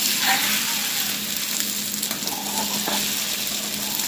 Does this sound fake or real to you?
real